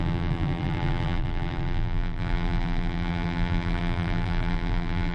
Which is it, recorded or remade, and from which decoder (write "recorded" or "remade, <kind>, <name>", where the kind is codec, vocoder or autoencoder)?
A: remade, vocoder, BigVGAN v2